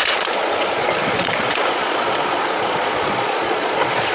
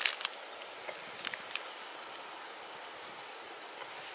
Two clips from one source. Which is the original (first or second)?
second